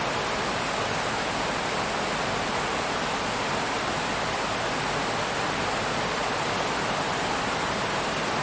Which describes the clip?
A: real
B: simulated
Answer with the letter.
A